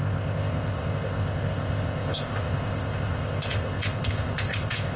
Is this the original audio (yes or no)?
no